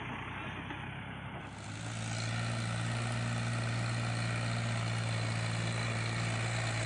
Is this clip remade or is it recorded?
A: recorded